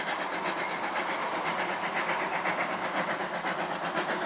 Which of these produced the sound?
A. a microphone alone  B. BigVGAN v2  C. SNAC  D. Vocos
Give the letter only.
A